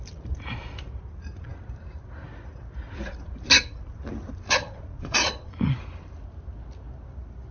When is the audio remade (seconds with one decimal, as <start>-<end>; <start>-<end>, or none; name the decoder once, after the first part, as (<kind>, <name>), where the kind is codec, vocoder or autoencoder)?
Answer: 4.6-5.5 (vocoder, Vocos)